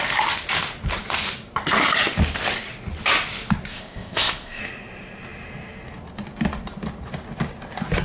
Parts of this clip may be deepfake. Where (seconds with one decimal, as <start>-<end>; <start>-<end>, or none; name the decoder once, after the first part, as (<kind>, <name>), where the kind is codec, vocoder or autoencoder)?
3.7-4.6 (codec, ZipCodec)